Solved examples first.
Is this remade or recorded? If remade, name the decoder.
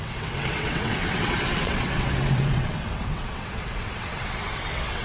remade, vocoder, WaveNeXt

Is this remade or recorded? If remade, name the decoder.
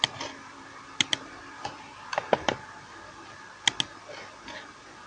recorded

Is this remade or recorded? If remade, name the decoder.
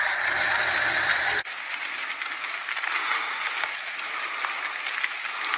recorded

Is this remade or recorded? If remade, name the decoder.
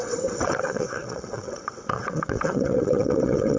remade, vocoder, WaveNeXt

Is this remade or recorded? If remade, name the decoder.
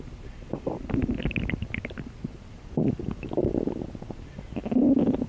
recorded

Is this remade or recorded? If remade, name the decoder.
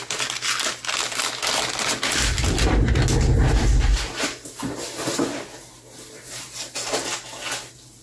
recorded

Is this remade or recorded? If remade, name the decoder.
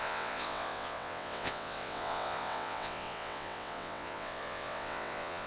remade, vocoder, WaveNeXt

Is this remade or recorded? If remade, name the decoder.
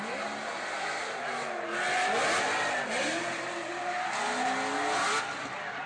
recorded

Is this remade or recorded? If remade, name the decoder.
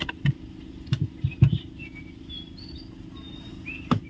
recorded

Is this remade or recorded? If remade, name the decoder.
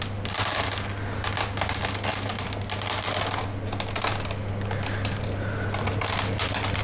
recorded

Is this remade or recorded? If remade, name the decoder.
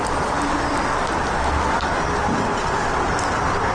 recorded